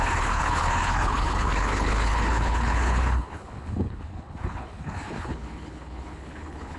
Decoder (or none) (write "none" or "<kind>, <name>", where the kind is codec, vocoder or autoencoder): codec, HILCodec